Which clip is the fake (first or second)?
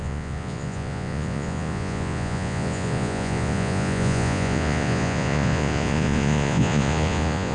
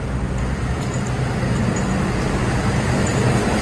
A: first